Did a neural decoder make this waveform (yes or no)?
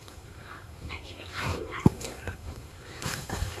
yes